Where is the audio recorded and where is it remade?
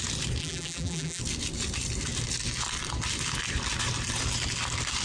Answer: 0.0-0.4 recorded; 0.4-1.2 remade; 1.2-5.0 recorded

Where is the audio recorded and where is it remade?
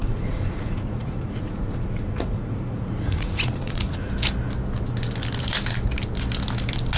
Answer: 0.0-4.1 remade; 4.1-7.0 recorded